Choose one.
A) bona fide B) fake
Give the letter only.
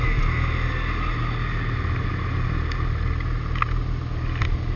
A